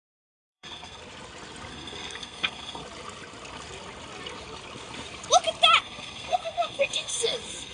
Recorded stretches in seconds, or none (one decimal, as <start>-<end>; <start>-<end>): 1.0-1.7; 2.8-5.8